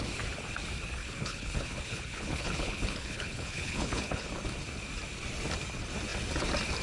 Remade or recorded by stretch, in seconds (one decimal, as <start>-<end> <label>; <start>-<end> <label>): 0.0-1.0 recorded; 1.0-4.3 remade; 4.3-6.8 recorded